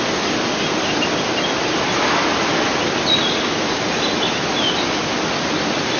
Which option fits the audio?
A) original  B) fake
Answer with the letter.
A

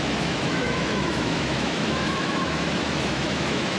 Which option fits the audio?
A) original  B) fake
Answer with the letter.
B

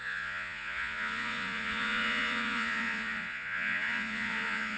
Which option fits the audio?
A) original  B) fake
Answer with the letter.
B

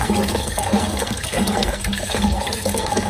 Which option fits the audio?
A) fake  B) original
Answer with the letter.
A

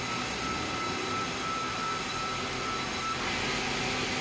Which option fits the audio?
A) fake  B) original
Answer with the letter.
B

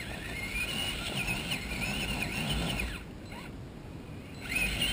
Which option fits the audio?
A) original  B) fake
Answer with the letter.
A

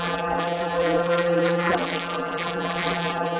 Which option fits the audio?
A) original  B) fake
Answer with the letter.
B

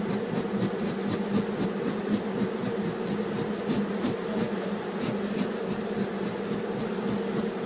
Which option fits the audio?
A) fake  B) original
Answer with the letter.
B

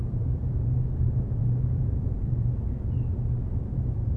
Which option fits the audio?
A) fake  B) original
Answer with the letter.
A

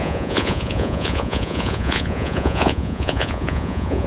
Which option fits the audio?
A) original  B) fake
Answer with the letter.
B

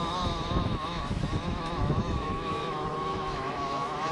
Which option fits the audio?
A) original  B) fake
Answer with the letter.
B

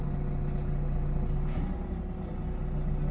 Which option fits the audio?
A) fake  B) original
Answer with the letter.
B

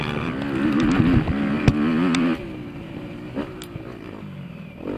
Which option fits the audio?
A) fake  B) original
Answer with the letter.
B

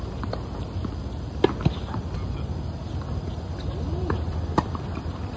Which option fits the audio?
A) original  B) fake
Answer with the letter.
A